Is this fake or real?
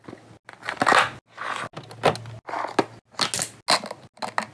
real